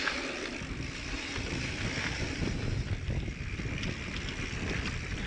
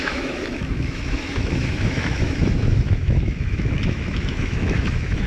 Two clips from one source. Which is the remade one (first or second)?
second